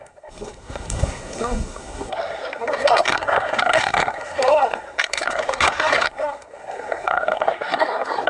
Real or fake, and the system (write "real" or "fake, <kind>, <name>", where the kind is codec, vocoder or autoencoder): fake, codec, SNAC